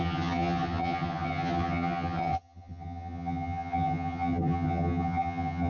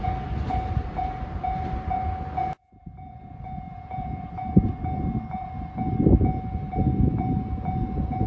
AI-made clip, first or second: first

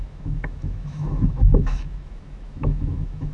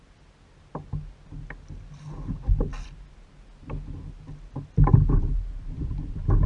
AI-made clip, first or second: first